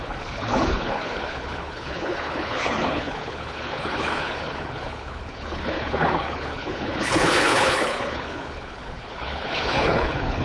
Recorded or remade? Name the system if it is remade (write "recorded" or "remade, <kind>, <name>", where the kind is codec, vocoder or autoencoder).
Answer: remade, codec, HILCodec